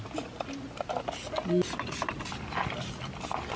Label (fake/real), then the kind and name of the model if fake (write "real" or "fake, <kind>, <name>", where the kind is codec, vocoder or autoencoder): real